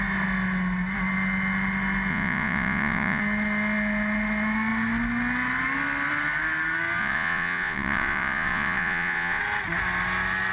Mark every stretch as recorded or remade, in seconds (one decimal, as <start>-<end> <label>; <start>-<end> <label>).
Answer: 0.0-2.1 recorded; 2.1-3.2 remade; 3.2-7.0 recorded; 7.0-9.4 remade; 9.4-10.5 recorded